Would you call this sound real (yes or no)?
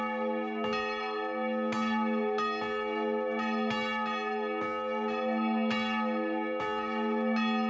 yes